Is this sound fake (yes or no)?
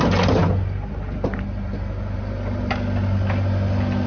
no